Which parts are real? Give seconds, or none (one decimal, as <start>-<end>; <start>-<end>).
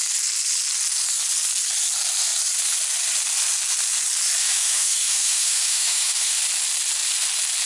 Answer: 0.0-4.4; 6.4-7.7